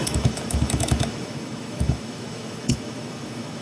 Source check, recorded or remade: remade